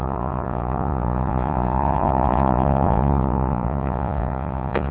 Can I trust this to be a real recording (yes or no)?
no